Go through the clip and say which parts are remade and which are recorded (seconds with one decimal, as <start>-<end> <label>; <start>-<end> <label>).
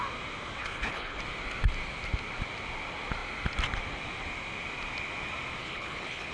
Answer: 0.0-0.6 recorded; 0.6-1.2 remade; 1.2-5.6 recorded; 5.6-6.3 remade